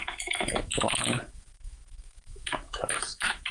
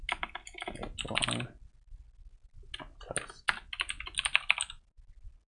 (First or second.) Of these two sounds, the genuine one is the second